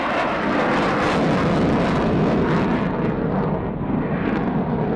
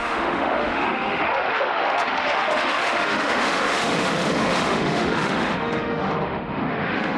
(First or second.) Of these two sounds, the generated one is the second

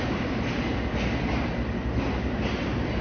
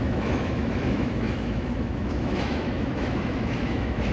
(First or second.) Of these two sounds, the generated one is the second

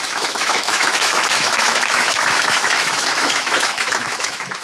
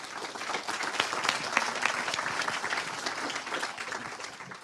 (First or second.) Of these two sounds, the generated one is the first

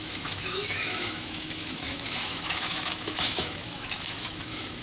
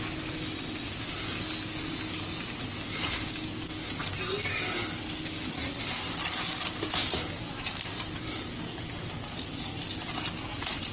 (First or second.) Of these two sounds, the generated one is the first